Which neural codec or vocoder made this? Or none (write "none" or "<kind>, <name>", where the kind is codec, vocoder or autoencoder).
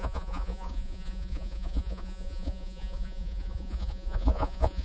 vocoder, Vocos